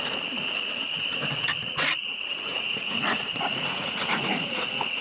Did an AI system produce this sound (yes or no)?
yes